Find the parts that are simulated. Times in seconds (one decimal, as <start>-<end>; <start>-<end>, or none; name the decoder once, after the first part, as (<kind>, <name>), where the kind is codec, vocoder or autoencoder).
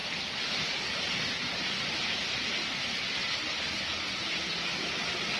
none